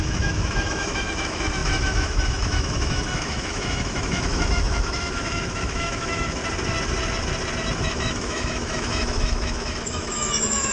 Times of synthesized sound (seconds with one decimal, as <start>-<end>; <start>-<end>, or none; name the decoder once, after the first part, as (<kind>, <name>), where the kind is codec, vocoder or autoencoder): 0.0-6.4 (autoencoder, DAC-VAE); 7.8-10.7